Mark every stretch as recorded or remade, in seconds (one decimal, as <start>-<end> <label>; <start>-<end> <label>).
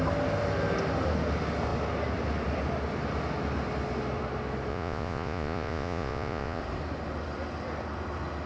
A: 0.0-4.7 recorded; 4.7-6.6 remade; 6.6-8.5 recorded